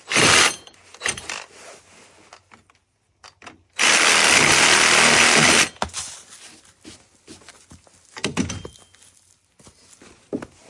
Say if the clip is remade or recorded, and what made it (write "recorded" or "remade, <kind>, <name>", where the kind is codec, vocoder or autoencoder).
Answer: recorded